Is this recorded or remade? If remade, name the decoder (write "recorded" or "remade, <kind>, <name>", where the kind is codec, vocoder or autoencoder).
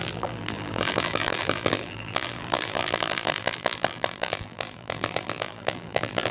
remade, vocoder, BigVGAN v2